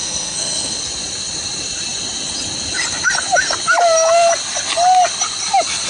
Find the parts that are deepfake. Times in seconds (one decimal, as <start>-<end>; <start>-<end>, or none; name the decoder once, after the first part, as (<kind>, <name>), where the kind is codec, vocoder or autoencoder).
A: 0.0-0.8 (codec, SNAC)